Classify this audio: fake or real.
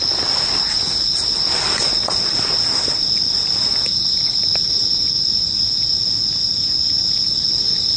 real